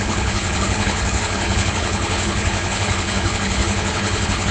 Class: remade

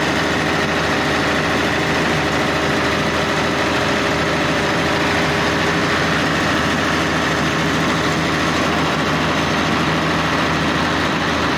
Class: recorded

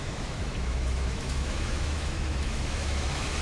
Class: remade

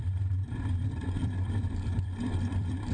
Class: remade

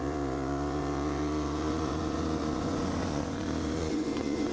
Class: remade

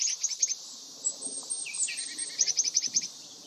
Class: remade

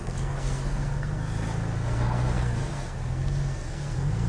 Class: remade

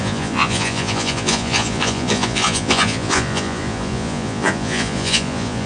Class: remade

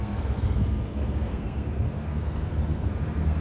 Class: remade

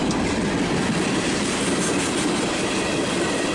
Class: recorded